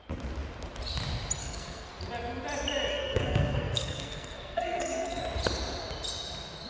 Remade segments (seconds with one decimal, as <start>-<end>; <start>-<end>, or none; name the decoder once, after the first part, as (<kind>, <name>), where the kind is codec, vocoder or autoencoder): 1.4-1.9 (codec, SNAC); 2.9-5.2